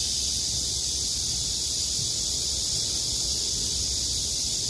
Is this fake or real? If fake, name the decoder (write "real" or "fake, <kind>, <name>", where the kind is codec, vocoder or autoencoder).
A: real